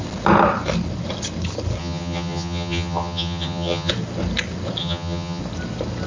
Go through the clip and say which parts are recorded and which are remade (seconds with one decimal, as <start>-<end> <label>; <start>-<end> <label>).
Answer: 0.0-1.8 recorded; 1.8-3.9 remade; 3.9-4.8 recorded; 4.8-5.4 remade; 5.4-6.1 recorded